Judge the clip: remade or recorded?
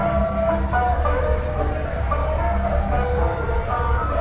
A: recorded